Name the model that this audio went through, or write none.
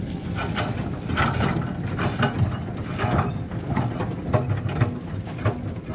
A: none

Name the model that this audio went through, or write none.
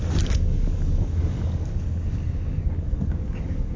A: codec, DAC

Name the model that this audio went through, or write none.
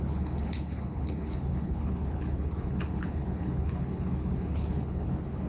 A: codec, HILCodec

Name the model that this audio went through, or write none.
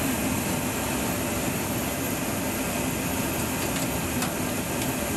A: none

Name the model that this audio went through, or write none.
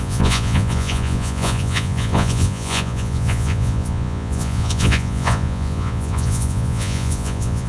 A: vocoder, Vocos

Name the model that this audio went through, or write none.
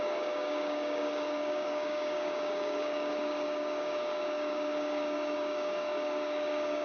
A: codec, DAC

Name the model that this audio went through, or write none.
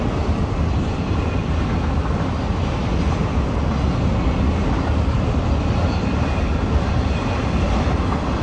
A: none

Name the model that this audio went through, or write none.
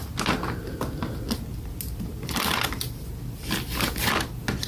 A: none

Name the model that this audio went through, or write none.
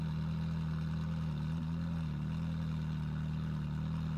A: none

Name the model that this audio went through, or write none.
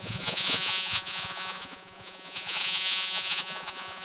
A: vocoder, Vocos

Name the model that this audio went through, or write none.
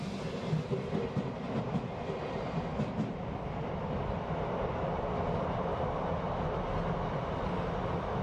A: none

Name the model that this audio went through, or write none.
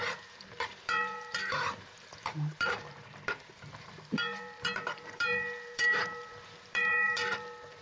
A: vocoder, BigVGAN v2